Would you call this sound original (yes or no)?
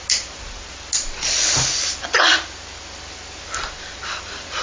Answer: yes